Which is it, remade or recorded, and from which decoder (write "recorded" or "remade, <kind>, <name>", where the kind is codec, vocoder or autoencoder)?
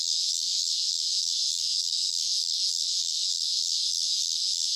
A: remade, codec, SNAC